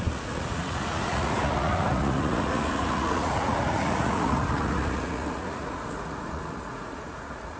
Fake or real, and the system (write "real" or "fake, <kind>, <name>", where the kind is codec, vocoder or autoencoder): fake, vocoder, Vocos